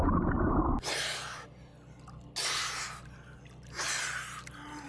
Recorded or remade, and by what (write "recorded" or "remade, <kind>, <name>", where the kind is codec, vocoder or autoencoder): recorded